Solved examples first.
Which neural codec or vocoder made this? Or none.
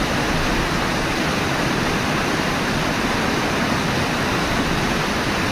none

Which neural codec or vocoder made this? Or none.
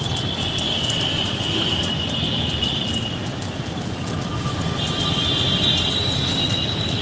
none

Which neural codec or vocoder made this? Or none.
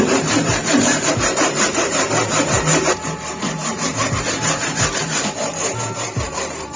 vocoder, BigVGAN v2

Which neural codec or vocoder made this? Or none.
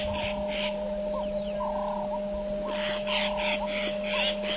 none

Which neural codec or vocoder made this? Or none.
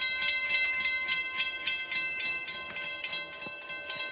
none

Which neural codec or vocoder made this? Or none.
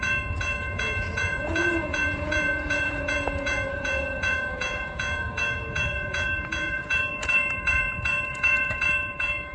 vocoder, Vocos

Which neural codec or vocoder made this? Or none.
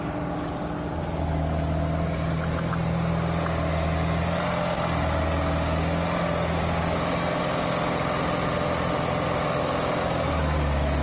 none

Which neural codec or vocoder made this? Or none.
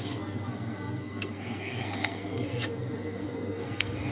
codec, SNAC